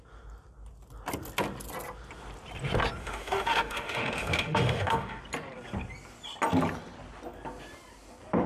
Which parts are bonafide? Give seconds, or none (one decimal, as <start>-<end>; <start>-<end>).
0.0-3.0; 5.2-8.5